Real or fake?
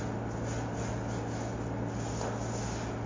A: real